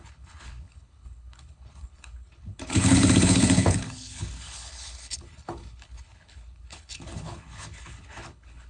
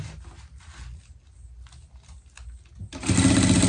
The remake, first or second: first